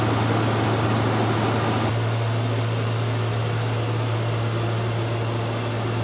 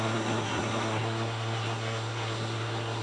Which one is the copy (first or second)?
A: second